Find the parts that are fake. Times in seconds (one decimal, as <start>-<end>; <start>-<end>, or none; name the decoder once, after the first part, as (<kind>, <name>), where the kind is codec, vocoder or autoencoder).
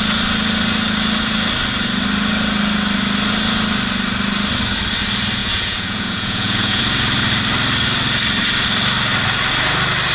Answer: 5.4-6.8 (vocoder, Vocos)